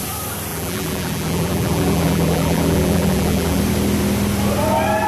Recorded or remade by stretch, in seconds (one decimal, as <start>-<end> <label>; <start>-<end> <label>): 0.0-0.5 recorded; 0.5-3.6 remade; 3.6-5.1 recorded